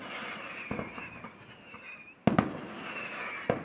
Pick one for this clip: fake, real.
real